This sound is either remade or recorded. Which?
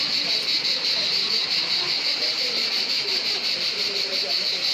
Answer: recorded